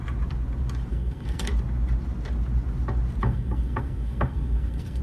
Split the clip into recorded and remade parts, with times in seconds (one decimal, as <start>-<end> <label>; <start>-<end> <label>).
0.0-0.9 recorded; 0.9-1.5 remade; 1.5-3.2 recorded; 3.2-5.0 remade